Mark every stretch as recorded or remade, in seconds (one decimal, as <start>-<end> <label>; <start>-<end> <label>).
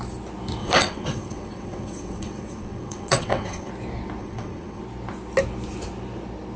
0.0-0.6 recorded; 0.6-3.7 remade; 3.7-4.2 recorded; 4.2-4.8 remade; 4.8-6.6 recorded